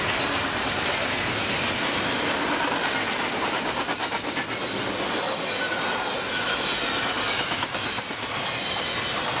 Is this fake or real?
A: real